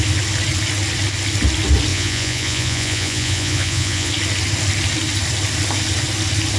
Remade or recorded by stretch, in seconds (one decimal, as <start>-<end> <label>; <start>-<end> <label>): 0.0-1.9 recorded; 1.9-4.1 remade; 4.1-6.6 recorded